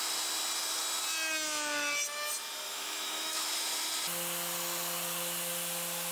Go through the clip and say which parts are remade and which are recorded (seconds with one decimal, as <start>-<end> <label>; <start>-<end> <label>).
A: 0.0-2.7 recorded; 2.7-3.5 remade; 3.5-6.1 recorded

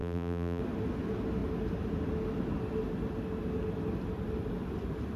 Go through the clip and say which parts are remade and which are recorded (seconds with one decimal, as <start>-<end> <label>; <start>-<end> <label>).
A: 0.0-0.6 remade; 0.6-5.2 recorded

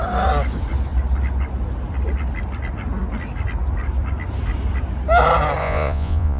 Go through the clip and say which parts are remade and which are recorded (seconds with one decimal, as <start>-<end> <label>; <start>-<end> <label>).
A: 0.0-5.6 recorded; 5.6-6.4 remade